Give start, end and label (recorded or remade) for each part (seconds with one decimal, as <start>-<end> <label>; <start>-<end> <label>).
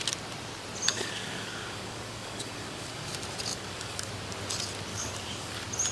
0.0-0.9 recorded; 0.9-3.1 remade; 3.1-3.5 recorded; 3.5-4.1 remade; 4.1-4.9 recorded; 4.9-5.5 remade; 5.5-5.9 recorded